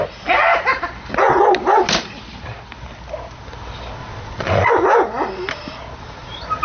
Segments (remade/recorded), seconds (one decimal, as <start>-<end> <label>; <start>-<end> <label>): 0.0-4.0 recorded; 4.0-4.7 remade; 4.7-6.6 recorded